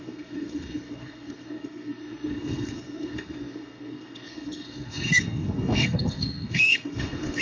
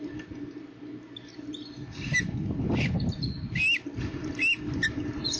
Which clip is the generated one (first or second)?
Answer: first